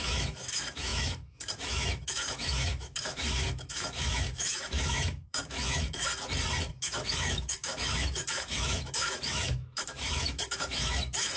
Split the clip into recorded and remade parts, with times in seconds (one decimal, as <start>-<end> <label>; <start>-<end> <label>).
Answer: 0.0-6.1 remade; 6.1-6.7 recorded; 6.7-11.4 remade